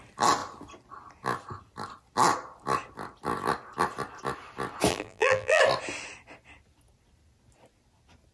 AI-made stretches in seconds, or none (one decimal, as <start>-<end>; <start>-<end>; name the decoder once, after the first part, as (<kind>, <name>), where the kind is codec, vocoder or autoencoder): 4.9-5.6 (vocoder, BigVGAN v2)